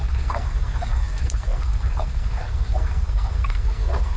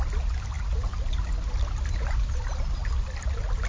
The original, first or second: second